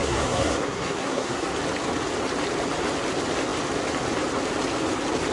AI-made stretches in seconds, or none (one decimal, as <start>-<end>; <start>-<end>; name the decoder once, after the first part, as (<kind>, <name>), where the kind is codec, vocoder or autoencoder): 0.0-1.5 (codec, SNAC)